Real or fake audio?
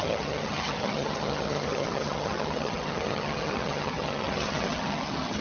fake